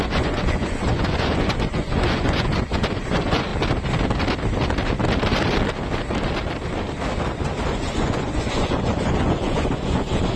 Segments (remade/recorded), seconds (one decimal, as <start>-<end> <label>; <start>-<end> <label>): 0.0-3.5 remade; 3.5-7.8 recorded; 7.8-10.4 remade